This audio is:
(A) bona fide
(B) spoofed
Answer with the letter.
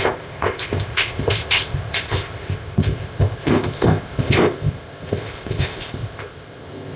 B